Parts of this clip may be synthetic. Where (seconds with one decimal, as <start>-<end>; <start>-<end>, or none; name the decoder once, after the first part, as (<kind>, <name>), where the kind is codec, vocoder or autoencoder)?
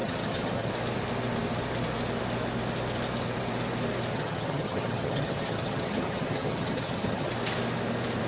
0.0-0.7 (vocoder, HiFi-GAN); 4.1-7.3